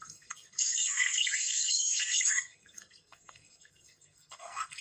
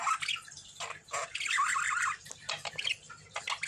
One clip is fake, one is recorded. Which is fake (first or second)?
first